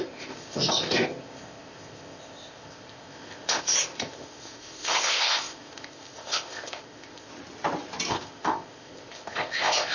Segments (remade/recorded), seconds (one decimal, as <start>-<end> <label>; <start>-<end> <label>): 0.0-7.3 remade; 7.3-8.1 recorded; 8.1-9.9 remade